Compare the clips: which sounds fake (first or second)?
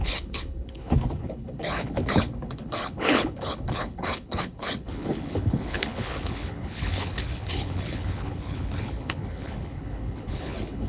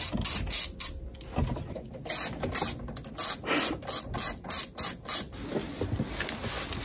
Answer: first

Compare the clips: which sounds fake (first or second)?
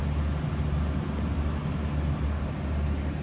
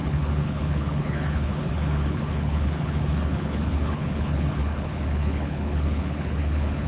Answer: second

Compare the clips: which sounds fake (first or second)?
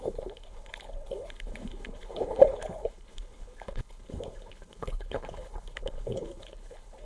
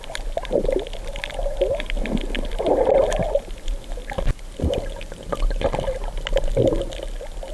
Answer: first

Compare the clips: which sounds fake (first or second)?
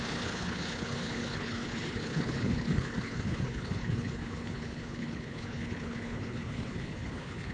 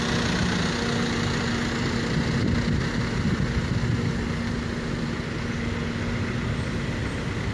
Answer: first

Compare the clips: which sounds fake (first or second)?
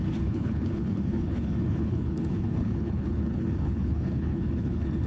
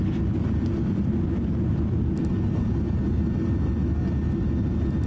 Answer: first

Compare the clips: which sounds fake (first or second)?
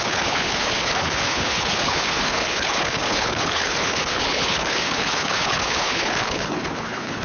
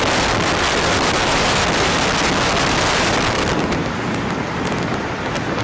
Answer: first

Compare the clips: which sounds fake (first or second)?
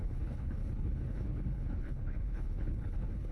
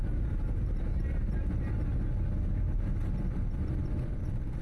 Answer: first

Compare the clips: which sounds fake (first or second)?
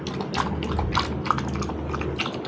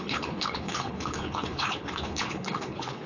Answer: second